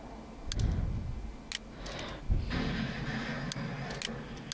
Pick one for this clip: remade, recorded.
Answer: recorded